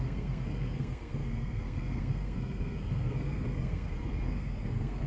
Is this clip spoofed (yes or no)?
yes